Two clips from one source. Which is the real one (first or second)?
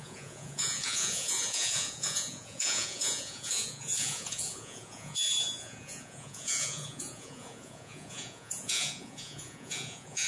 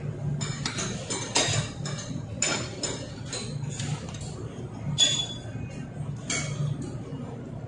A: second